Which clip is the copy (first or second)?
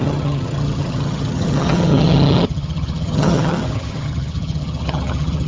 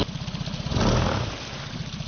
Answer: first